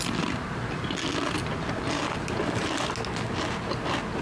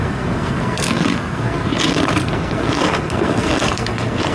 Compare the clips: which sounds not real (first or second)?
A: second